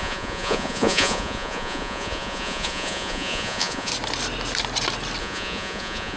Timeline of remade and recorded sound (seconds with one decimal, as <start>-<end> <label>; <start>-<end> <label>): 0.0-3.9 remade; 3.9-5.2 recorded; 5.2-6.2 remade